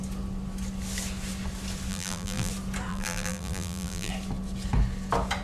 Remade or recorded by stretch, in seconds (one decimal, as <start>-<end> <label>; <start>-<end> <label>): 0.0-1.9 recorded; 1.9-2.5 remade; 2.5-2.9 recorded; 2.9-4.1 remade; 4.1-5.4 recorded